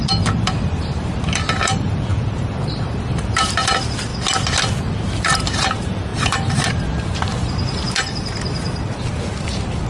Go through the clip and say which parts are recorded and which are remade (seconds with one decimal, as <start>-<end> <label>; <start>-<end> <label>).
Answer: 0.0-4.1 remade; 4.1-4.8 recorded; 4.8-9.9 remade